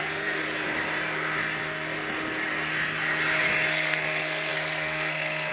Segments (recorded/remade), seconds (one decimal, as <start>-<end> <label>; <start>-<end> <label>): 0.0-0.4 remade; 0.4-3.7 recorded; 3.7-5.5 remade